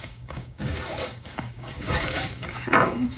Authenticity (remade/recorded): remade